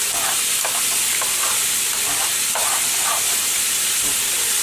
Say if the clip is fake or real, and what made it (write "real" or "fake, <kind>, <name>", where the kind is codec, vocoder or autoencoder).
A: real